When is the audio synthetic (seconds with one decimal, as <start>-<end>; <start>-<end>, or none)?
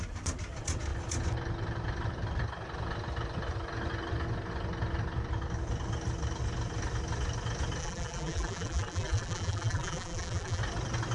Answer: 7.8-10.6